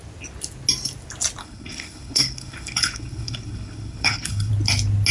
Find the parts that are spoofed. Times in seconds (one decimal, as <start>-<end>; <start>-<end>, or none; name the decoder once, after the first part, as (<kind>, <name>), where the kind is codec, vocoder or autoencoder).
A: 1.4-4.5 (codec, HILCodec)